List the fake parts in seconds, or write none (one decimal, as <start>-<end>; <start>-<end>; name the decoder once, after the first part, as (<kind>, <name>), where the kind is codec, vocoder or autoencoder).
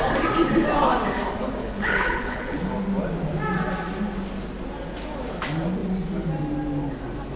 1.6-2.6 (codec, HILCodec)